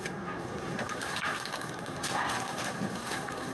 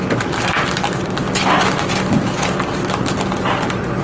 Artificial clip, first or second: first